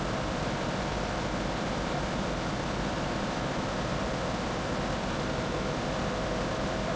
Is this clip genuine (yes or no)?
yes